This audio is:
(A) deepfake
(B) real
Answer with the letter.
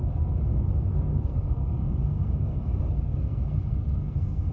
A